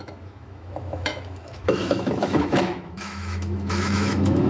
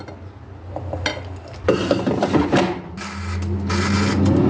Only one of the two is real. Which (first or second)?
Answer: second